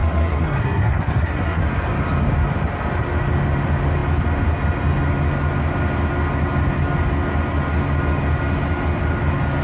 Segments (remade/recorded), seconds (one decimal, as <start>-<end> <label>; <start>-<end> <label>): 0.0-1.6 remade; 1.6-9.6 recorded